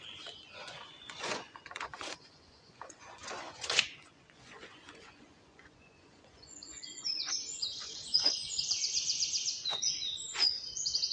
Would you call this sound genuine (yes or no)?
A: no